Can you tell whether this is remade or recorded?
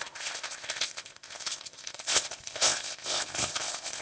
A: remade